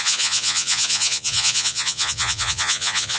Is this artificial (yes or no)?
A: yes